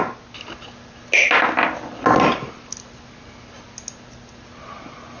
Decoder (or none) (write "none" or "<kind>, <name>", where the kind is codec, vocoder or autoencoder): none